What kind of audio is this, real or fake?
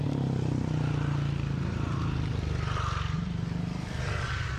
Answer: real